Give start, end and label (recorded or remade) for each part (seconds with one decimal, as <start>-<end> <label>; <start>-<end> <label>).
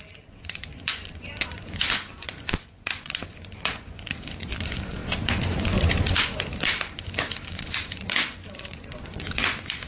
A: 0.0-9.9 remade